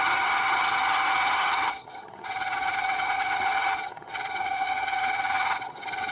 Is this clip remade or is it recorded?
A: remade